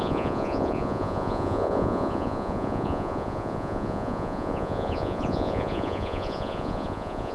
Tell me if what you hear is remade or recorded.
remade